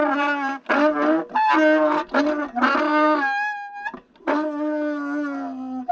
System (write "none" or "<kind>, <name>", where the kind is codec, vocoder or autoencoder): none